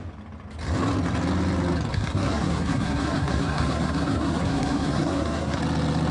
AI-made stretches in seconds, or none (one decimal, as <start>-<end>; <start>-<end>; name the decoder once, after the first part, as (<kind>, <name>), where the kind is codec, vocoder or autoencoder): 1.9-5.6 (codec, SNAC)